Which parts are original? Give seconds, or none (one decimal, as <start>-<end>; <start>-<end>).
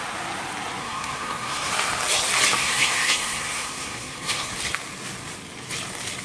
0.0-0.8; 1.7-2.6; 4.5-6.2